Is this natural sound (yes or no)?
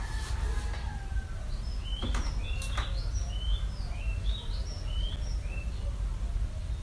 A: yes